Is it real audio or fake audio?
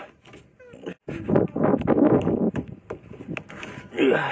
real